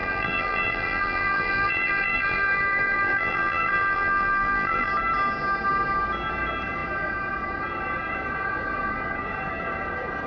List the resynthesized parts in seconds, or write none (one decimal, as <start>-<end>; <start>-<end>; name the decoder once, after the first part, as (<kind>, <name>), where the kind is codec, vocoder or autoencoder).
0.0-4.9 (vocoder, BigVGAN v2)